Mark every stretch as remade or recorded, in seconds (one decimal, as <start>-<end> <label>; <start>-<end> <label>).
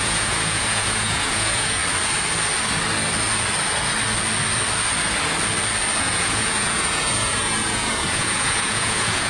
0.0-1.8 remade; 1.8-6.0 recorded; 6.0-9.3 remade